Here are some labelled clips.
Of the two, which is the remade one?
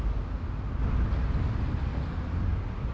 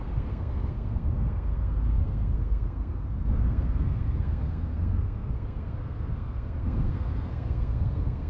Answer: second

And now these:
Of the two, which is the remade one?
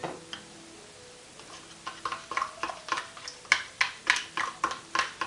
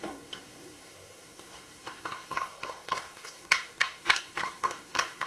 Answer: second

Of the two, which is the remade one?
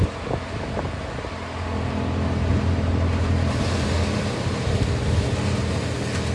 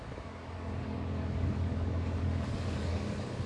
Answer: second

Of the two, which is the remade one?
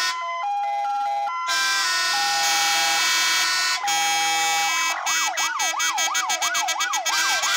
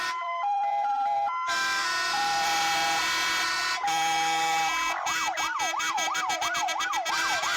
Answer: second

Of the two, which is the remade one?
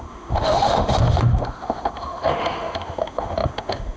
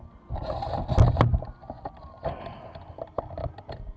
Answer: first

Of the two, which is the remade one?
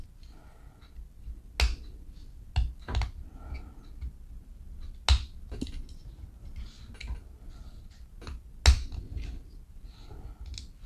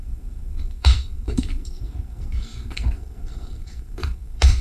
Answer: second